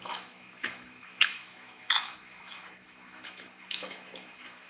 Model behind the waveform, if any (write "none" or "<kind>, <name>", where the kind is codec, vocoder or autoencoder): autoencoder, DAC-VAE